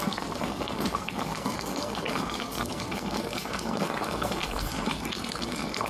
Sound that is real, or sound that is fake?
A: fake